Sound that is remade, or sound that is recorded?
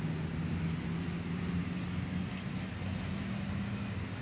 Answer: recorded